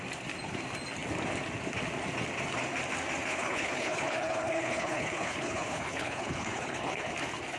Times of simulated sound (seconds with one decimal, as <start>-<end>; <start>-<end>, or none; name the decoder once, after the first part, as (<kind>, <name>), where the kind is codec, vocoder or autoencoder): 3.3-7.1 (codec, HILCodec)